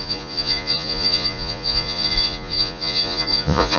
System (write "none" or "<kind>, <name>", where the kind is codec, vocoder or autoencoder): vocoder, Vocos